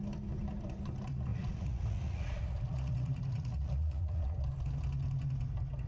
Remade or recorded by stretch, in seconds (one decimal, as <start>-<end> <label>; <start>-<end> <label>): 0.0-1.3 recorded; 1.3-4.2 remade; 4.2-5.9 recorded